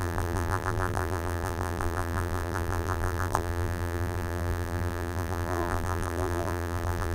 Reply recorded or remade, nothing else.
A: remade